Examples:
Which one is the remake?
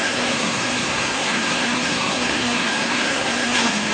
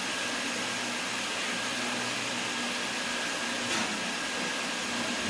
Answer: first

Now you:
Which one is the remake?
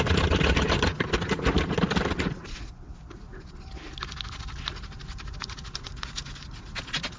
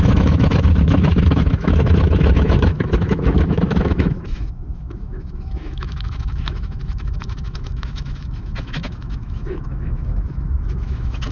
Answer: second